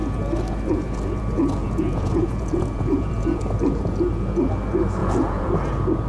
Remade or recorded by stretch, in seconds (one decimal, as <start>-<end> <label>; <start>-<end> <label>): 0.0-1.6 recorded; 1.6-3.4 remade; 3.4-5.0 recorded; 5.0-5.5 remade; 5.5-6.1 recorded